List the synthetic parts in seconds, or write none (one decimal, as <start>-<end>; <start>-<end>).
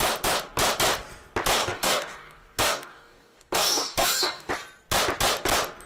1.6-4.5